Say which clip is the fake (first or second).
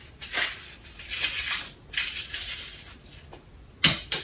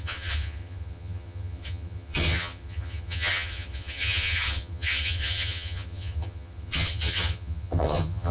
second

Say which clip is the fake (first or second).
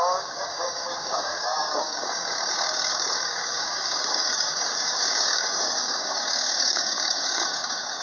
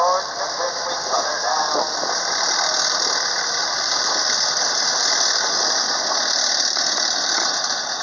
first